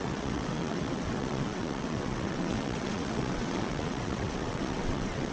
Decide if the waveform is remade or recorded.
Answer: remade